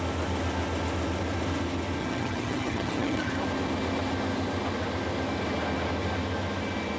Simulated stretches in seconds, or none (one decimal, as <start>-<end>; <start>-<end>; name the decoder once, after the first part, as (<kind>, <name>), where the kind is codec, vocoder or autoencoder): 2.0-3.3 (vocoder, HiFi-GAN)